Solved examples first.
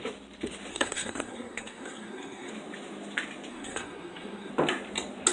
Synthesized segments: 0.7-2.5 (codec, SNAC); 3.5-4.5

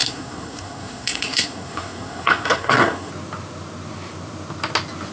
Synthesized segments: 0.0-3.1 (codec, SNAC)

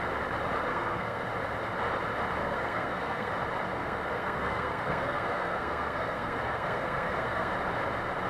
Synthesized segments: 0.7-1.2 (codec, SNAC); 2.4-3.3; 3.7-7.5

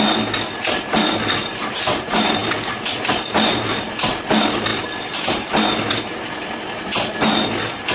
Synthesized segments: none